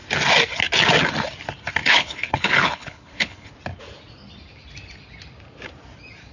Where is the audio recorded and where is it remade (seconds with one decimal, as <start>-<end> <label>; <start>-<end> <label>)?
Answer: 0.0-1.8 recorded; 1.8-3.5 remade; 3.5-6.3 recorded